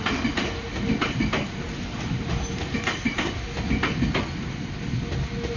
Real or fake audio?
real